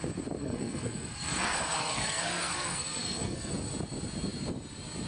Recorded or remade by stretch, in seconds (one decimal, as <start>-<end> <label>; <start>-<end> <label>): 0.0-0.4 recorded; 0.4-3.5 remade; 3.5-5.1 recorded